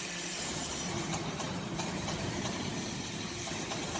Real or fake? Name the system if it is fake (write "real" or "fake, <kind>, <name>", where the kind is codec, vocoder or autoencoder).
fake, vocoder, BigVGAN v2